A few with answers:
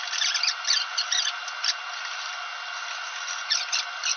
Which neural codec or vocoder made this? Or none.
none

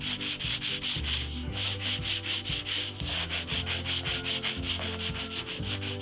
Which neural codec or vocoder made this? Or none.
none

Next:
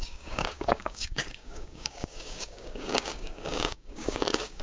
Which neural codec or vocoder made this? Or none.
codec, DAC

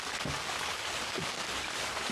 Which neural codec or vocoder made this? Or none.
codec, DAC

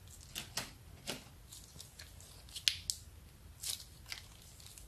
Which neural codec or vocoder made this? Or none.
none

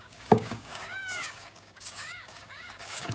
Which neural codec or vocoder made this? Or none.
codec, DAC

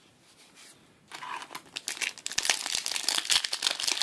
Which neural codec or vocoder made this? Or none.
none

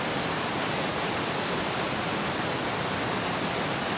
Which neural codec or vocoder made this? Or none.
none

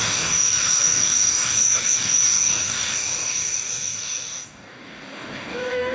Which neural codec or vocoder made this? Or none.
codec, DAC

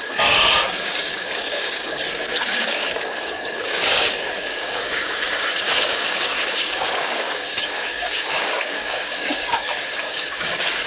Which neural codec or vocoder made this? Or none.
codec, DAC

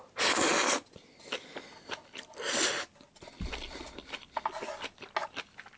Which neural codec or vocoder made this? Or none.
none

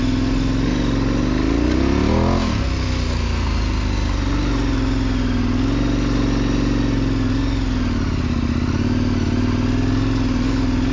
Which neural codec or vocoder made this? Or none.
none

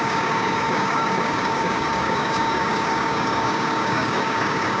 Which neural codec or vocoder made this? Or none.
codec, DAC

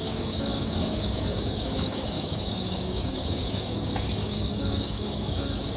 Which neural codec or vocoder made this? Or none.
codec, DAC